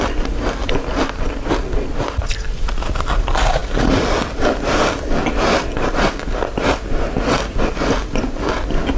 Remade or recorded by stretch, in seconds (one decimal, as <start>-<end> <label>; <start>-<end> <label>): 0.0-9.0 recorded